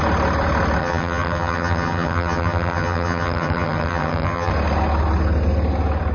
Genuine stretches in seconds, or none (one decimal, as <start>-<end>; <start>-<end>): 0.0-0.8; 4.5-6.1